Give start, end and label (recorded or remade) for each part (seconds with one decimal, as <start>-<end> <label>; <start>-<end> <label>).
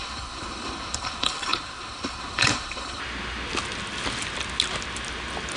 0.0-3.0 remade; 3.0-5.6 recorded